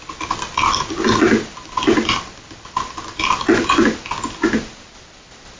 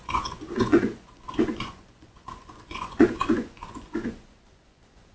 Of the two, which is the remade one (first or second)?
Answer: second